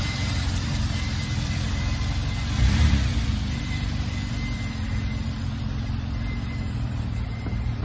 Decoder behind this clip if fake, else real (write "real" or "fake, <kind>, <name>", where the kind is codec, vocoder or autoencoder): fake, vocoder, BigVGAN v2